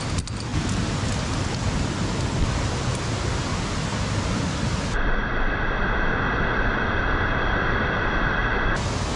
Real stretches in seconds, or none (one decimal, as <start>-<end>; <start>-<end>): 0.0-9.2